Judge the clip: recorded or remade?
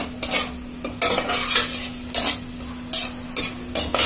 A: recorded